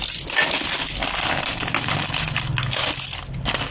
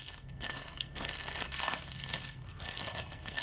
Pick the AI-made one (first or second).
second